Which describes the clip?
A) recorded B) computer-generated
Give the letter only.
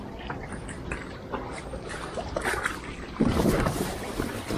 B